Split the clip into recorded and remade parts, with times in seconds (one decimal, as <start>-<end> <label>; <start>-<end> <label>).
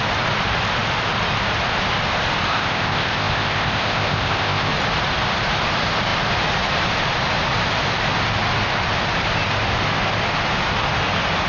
0.0-2.5 recorded; 2.5-4.7 remade; 4.7-11.5 recorded